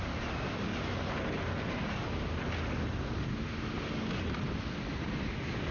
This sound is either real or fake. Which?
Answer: real